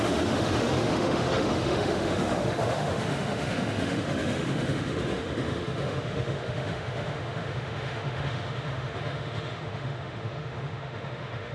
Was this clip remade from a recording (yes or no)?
yes